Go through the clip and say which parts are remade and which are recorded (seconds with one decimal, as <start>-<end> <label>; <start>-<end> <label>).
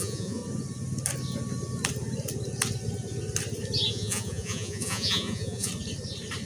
0.0-0.4 remade; 0.4-3.9 recorded; 3.9-5.7 remade; 5.7-6.5 recorded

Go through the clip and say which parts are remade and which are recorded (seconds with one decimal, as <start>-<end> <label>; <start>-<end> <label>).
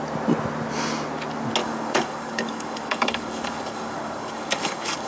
0.0-1.6 recorded; 1.6-5.1 remade